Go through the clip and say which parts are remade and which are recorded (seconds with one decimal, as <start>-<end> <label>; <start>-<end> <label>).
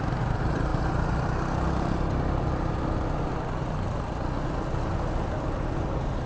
0.0-6.3 recorded